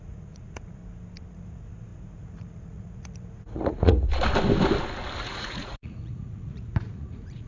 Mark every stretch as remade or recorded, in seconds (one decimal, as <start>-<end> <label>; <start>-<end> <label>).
0.0-0.8 remade; 0.8-1.3 recorded; 1.3-4.1 remade; 4.1-5.2 recorded; 5.2-7.5 remade